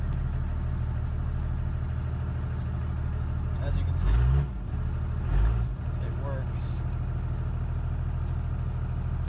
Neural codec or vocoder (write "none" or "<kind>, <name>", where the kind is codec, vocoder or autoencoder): none